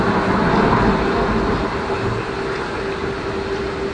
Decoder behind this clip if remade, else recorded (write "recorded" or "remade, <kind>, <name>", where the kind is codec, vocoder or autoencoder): recorded